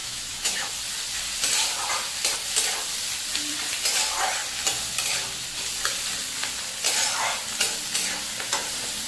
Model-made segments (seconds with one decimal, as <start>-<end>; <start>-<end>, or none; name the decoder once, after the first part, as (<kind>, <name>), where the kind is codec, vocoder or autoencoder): 0.0-0.7 (autoencoder, DAC-VAE)